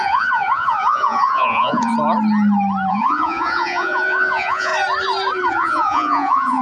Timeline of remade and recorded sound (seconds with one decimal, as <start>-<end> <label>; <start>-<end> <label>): 0.0-1.9 remade; 1.9-2.9 recorded; 2.9-4.7 remade; 4.7-5.5 recorded; 5.5-6.6 remade